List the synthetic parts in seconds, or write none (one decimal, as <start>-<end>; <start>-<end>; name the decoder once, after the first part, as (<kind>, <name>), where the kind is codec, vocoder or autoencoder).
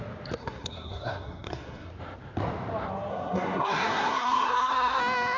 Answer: 0.4-1.9 (codec, SNAC); 3.1-5.0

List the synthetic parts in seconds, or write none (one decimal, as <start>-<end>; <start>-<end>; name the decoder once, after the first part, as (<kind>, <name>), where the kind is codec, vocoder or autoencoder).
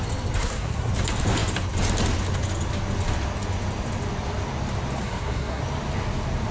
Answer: 0.4-0.9 (codec, SNAC); 5.0-5.6